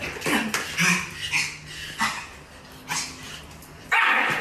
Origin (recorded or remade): recorded